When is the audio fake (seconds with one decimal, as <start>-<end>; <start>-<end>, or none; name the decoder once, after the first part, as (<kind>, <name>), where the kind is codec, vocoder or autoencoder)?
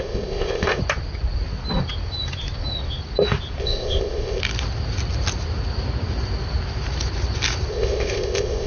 0.0-0.8 (codec, ZipCodec); 3.6-4.4; 7.7-8.7